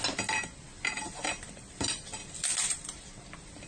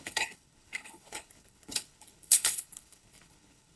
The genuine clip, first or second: first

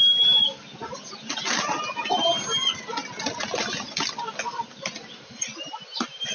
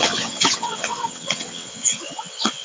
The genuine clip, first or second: first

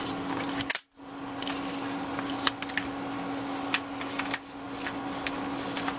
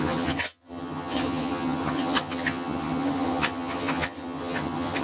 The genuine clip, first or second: first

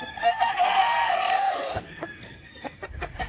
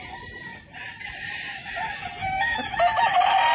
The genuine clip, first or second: second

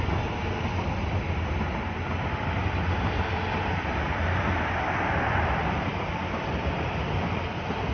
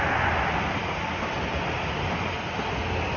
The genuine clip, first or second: second